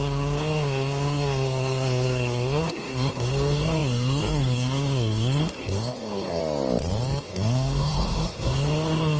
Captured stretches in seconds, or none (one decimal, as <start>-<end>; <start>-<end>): 6.4-7.2